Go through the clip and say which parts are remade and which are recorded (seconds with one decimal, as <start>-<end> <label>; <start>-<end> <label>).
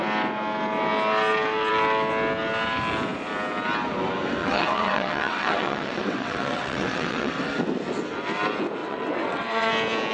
0.0-4.4 recorded; 4.4-7.3 remade; 7.3-8.8 recorded; 8.8-9.7 remade; 9.7-10.1 recorded